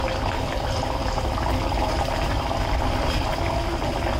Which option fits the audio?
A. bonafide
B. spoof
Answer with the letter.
A